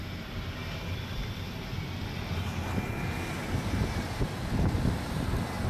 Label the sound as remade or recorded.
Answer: recorded